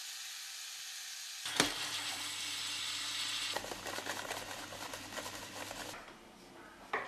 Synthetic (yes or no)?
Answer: no